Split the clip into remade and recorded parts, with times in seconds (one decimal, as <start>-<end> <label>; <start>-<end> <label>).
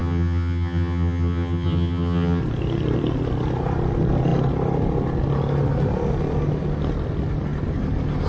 0.0-2.4 remade; 2.4-8.3 recorded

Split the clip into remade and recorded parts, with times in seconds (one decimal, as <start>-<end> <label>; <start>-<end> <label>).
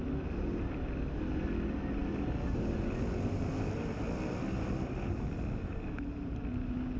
0.0-7.0 recorded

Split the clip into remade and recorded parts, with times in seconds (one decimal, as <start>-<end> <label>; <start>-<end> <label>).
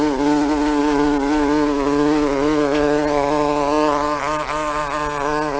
0.0-5.6 recorded